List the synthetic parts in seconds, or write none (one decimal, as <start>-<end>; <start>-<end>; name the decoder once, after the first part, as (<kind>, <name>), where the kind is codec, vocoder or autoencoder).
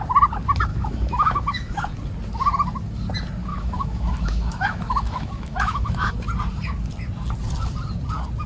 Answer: 0.7-1.9 (autoencoder, DAC-VAE); 3.5-6.1